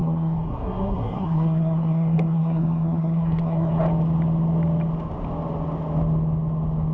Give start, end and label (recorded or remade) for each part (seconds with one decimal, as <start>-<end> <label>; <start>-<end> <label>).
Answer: 0.0-3.8 remade; 3.8-6.9 recorded